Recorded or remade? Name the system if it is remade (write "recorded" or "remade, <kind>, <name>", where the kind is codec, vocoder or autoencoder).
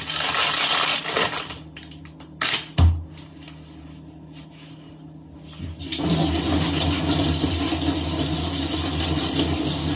recorded